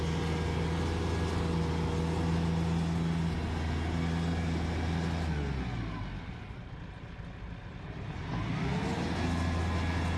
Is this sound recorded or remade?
recorded